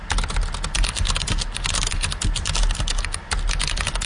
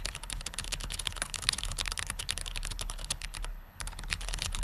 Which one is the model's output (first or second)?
second